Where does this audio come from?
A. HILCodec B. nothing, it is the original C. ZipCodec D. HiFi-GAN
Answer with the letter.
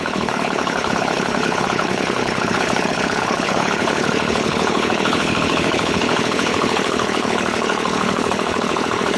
A